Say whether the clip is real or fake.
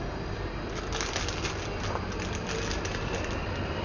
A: real